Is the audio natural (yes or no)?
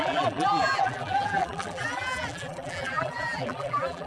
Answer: no